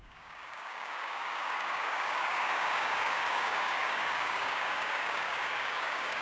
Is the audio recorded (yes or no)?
no